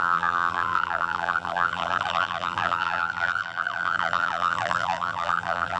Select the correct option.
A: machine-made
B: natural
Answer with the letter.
A